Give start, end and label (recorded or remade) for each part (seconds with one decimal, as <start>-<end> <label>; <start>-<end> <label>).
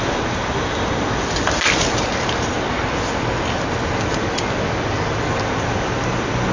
0.0-6.5 recorded